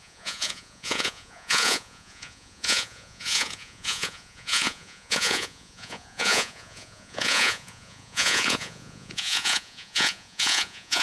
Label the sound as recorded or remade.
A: remade